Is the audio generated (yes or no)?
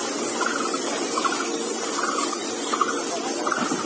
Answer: no